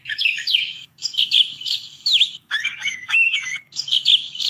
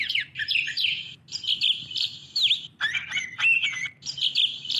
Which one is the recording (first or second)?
second